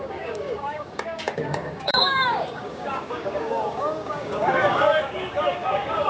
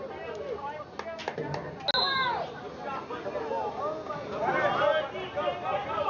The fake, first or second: first